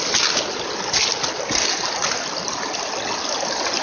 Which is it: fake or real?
real